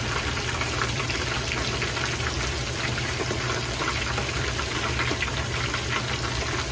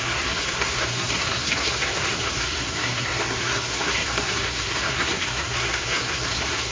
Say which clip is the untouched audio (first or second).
first